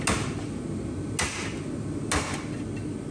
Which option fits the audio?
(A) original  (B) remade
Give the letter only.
A